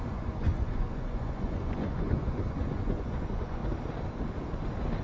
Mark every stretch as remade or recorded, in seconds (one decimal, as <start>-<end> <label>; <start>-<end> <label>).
0.0-3.6 remade; 3.6-5.0 recorded